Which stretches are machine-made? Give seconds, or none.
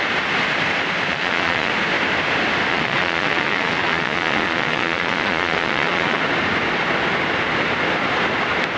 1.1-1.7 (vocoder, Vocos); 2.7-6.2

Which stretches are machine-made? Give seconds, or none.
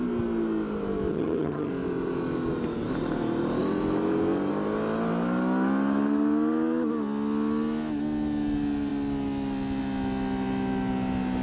1.1-1.7 (vocoder, HiFi-GAN)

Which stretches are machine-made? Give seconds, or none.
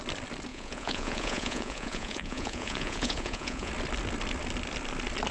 0.5-3.7 (vocoder, Vocos)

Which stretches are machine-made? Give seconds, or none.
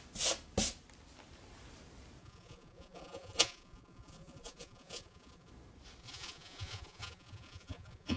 2.2-5.5 (vocoder, Vocos); 6.0-8.2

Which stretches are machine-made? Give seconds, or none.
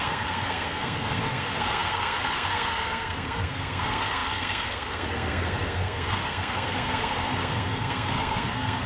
0.0-8.9 (codec, SNAC)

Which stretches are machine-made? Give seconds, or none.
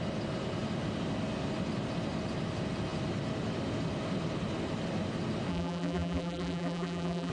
5.5-7.3 (vocoder, BigVGAN v2)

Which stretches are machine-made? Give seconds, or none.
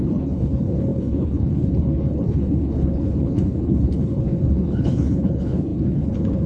0.0-6.5 (codec, HILCodec)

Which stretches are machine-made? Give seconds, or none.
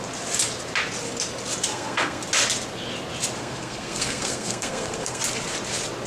1.7-2.2 (codec, SNAC); 3.4-5.2